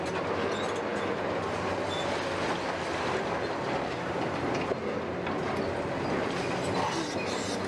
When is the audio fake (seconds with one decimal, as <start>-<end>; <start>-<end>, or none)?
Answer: none